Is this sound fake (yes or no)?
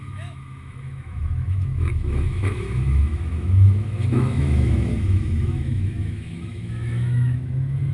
yes